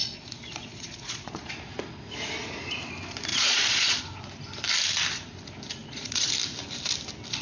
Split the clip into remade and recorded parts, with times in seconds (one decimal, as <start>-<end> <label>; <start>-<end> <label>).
0.0-1.5 remade; 1.5-3.3 recorded; 3.3-4.0 remade; 4.0-5.8 recorded; 5.8-6.3 remade; 6.3-7.4 recorded